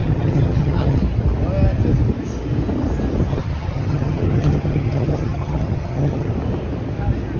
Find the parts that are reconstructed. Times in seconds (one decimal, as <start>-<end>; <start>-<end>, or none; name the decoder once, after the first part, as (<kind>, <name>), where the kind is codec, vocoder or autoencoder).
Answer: 0.0-1.0 (vocoder, HiFi-GAN); 3.3-6.3